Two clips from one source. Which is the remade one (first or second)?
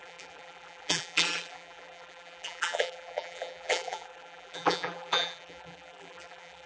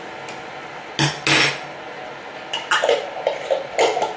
first